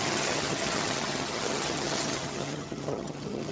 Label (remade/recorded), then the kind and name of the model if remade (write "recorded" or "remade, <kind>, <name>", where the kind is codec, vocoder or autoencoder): remade, vocoder, HiFi-GAN